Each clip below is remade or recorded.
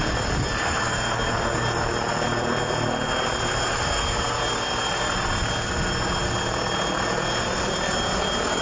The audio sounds recorded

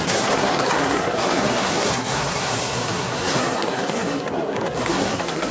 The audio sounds remade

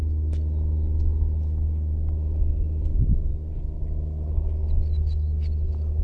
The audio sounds recorded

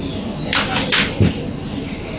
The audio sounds recorded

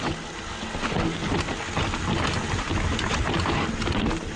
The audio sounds recorded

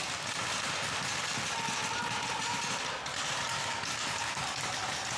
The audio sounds recorded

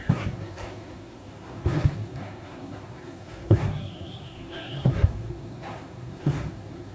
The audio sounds remade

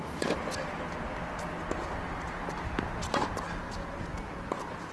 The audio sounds recorded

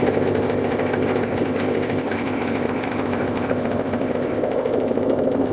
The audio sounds remade